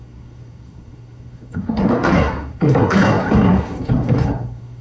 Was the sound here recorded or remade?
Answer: remade